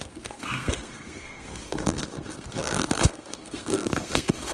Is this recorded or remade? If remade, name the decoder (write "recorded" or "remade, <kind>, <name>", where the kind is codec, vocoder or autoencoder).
remade, codec, SNAC